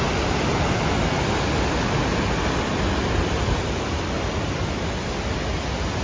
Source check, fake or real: real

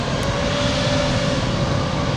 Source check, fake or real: real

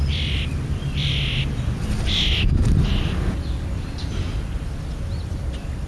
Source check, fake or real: fake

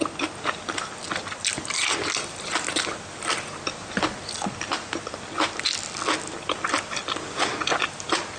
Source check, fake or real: real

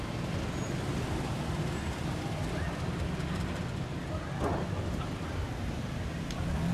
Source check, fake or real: real